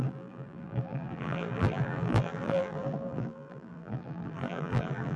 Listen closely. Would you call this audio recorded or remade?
remade